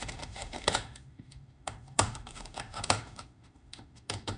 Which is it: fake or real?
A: fake